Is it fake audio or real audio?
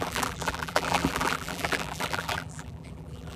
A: fake